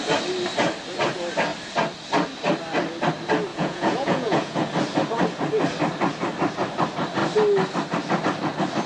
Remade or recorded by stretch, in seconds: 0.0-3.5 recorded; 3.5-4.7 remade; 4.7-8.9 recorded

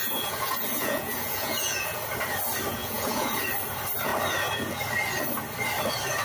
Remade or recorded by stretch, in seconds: 0.0-2.0 remade; 2.0-2.8 recorded; 2.8-3.4 remade; 3.4-6.2 recorded

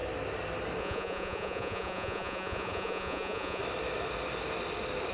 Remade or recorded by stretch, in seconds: 0.0-0.8 recorded; 0.8-3.6 remade; 3.6-5.1 recorded

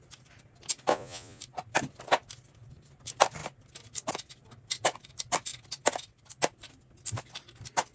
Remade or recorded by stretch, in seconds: 0.0-0.9 recorded; 0.9-1.4 remade; 1.4-7.9 recorded

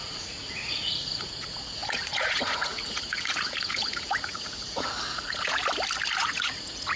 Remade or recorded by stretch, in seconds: 0.0-5.6 remade; 5.6-6.2 recorded; 6.2-7.0 remade

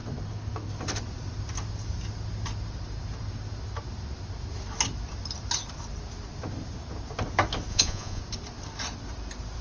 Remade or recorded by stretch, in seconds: 0.0-7.7 recorded; 7.7-8.2 remade; 8.2-9.6 recorded

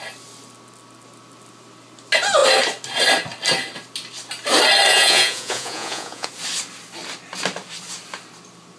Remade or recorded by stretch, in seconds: 0.0-4.9 recorded; 4.9-6.3 remade; 6.3-8.8 recorded

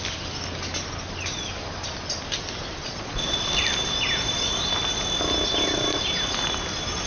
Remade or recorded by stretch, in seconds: 0.0-2.8 recorded; 2.8-3.5 remade; 3.5-7.1 recorded